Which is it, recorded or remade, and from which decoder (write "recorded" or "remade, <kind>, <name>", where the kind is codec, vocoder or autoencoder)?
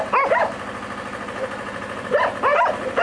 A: recorded